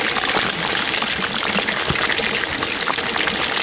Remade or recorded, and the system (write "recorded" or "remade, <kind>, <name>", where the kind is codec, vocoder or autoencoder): recorded